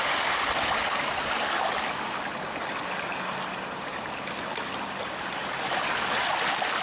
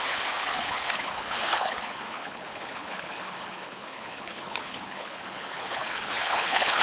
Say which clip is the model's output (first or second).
second